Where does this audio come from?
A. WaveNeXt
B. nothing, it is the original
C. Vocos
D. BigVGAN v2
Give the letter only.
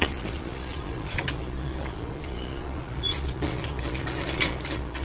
C